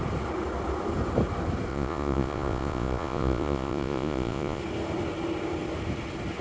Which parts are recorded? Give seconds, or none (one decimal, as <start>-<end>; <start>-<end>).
0.0-1.7; 4.6-6.4